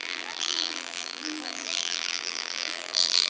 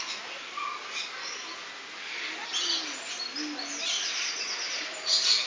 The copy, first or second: first